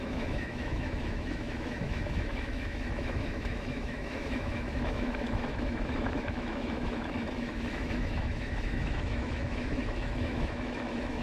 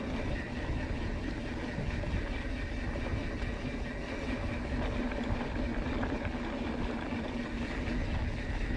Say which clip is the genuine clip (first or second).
second